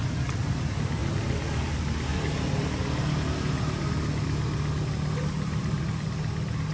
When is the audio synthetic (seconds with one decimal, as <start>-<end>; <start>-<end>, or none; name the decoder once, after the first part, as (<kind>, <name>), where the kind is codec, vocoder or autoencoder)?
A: none